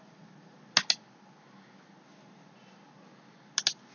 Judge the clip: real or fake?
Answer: real